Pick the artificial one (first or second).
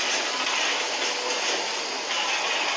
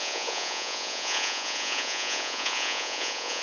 second